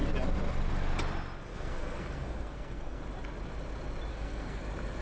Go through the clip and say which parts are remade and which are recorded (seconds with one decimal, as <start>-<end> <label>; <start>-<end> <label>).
0.0-1.5 recorded; 1.5-3.0 remade; 3.0-4.1 recorded; 4.1-4.6 remade; 4.6-5.0 recorded

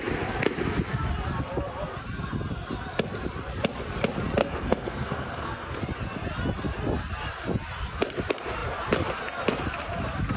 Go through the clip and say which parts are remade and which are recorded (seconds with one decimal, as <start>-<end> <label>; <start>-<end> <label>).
0.0-4.4 recorded; 4.4-5.8 remade; 5.8-10.4 recorded

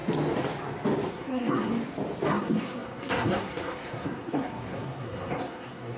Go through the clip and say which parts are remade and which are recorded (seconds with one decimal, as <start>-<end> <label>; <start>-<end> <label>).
0.0-1.1 recorded; 1.1-1.7 remade; 1.7-2.3 recorded; 2.3-6.0 remade